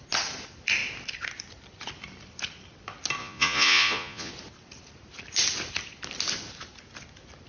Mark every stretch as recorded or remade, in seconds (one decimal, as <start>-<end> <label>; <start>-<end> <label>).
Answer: 0.0-3.2 recorded; 3.2-4.3 remade; 4.3-7.5 recorded